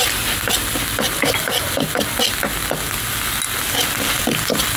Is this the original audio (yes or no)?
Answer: yes